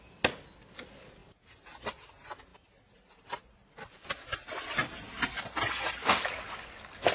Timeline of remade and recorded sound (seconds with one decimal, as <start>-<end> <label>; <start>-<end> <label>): 0.0-7.1 recorded

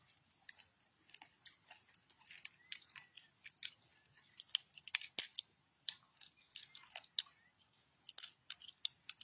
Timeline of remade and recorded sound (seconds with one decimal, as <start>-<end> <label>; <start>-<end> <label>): 0.0-9.2 recorded

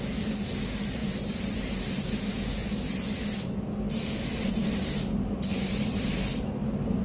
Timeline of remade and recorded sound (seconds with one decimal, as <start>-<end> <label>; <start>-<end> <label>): 0.0-4.3 recorded; 4.3-4.8 remade; 4.8-7.0 recorded